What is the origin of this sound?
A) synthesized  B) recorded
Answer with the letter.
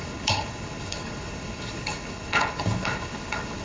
A